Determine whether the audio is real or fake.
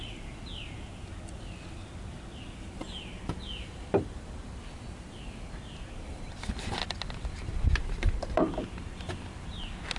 fake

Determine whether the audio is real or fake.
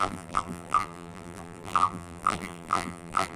fake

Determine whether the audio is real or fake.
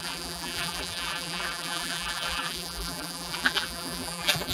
fake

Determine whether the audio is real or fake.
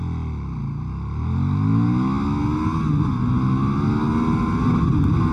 real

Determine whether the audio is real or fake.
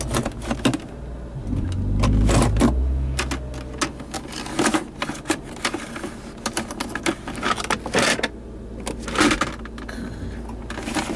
real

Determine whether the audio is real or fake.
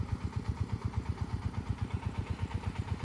fake